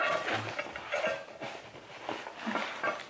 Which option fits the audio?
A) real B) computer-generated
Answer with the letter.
A